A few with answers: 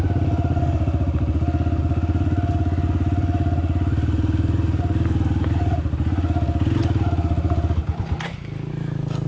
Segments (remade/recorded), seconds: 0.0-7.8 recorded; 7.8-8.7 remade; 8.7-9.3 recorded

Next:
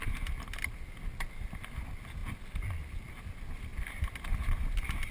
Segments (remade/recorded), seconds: 0.0-5.1 recorded